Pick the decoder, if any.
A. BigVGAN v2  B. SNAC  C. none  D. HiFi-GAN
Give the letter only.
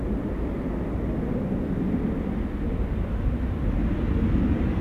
C